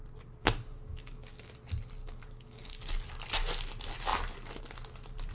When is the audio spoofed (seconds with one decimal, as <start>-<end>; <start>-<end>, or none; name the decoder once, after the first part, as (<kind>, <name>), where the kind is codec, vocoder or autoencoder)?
0.4-1.5 (codec, DAC); 2.0-2.8